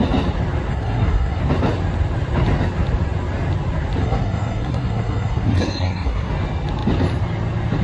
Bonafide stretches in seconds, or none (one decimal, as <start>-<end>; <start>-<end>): 0.0-0.7; 1.4-4.0; 6.3-7.8

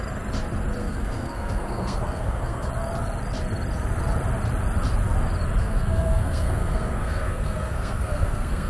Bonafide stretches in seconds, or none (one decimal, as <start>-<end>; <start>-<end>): 0.0-0.8; 2.7-5.6

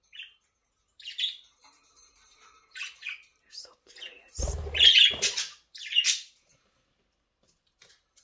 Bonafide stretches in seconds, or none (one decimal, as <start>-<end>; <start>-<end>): 0.0-8.2

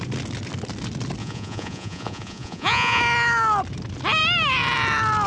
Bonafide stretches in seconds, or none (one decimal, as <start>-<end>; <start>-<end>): 0.0-1.2; 3.0-5.3

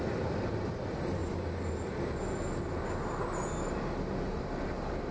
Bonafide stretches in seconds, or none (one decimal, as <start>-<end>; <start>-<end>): 1.2-4.3

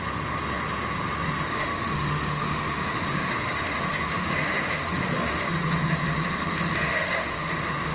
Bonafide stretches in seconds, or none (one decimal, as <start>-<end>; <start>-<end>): 0.0-1.5; 5.5-6.9; 7.5-7.9

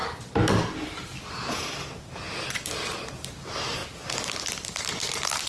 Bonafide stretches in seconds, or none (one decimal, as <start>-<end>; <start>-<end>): 0.0-3.3; 3.8-4.9

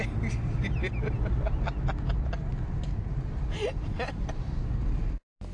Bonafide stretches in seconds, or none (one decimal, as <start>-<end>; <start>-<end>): 0.0-5.5